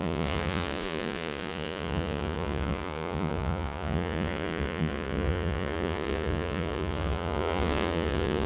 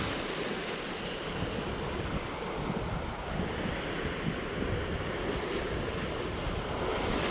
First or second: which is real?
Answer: second